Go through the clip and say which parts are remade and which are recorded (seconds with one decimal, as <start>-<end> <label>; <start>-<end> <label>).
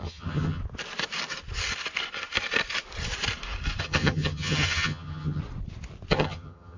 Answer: 0.0-0.6 remade; 0.6-3.8 recorded; 3.8-5.4 remade; 5.4-6.1 recorded; 6.1-6.8 remade